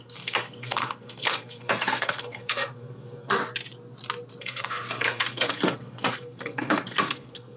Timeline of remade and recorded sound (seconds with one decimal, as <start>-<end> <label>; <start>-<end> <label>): 0.0-3.4 remade; 3.4-4.4 recorded; 4.4-7.6 remade